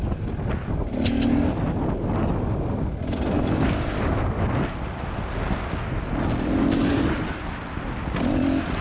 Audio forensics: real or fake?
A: real